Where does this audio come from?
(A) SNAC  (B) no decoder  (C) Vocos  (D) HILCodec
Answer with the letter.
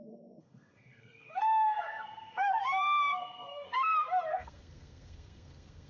A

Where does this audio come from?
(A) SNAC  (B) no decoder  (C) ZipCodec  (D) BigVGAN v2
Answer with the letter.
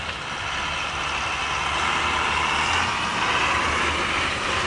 B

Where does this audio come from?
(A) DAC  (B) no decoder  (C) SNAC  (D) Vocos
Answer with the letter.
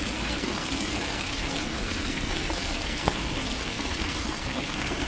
C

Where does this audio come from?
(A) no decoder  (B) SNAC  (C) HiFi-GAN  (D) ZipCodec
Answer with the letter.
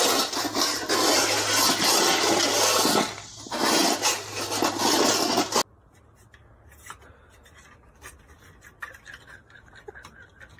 A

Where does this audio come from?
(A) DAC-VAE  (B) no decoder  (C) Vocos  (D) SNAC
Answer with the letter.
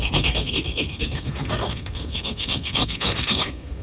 D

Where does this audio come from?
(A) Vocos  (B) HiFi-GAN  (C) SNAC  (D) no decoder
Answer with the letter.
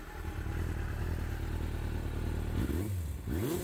D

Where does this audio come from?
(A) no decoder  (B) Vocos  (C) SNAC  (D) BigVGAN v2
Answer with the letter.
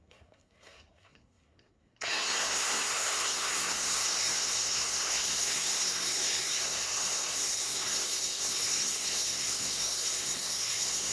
C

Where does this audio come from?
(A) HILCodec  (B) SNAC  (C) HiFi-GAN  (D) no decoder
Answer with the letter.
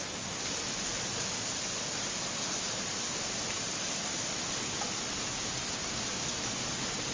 D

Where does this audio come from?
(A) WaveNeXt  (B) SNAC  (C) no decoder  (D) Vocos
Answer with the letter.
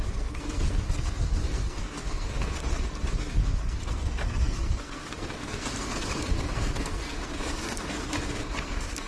B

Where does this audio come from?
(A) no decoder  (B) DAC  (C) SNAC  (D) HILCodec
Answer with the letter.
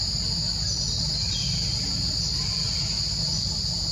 A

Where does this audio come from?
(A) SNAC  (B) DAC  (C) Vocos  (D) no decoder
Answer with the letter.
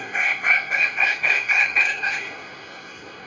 A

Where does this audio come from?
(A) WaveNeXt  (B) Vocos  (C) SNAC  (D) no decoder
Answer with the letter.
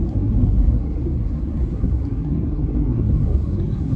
C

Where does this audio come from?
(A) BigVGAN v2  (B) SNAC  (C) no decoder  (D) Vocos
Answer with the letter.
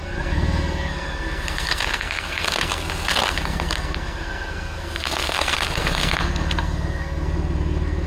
B